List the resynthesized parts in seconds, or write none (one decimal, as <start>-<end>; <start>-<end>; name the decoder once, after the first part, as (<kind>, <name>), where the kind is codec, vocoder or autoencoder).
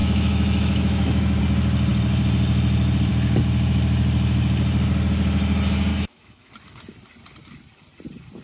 0.0-1.4 (autoencoder, DAC-VAE); 5.9-6.5